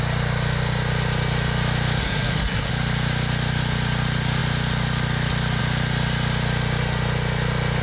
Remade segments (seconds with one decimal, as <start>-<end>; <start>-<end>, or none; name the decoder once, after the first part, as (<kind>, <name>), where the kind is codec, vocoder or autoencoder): 2.0-2.7 (codec, SNAC)